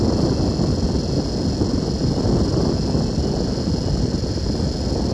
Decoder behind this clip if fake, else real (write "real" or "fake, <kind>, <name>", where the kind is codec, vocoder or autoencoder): real